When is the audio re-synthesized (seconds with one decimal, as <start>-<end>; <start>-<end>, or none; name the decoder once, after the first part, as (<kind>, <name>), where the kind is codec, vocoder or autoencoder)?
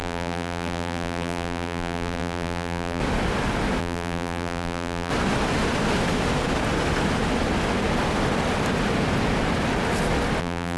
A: 0.0-3.0 (vocoder, BigVGAN v2); 3.8-5.1; 10.4-10.8